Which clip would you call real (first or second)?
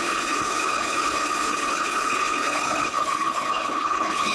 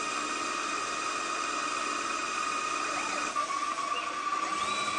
second